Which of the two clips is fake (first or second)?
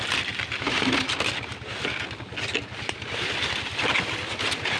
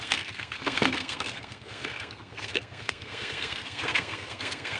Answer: second